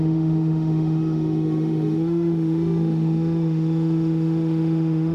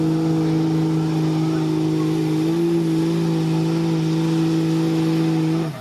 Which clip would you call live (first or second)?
second